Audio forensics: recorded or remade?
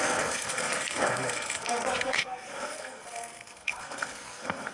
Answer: remade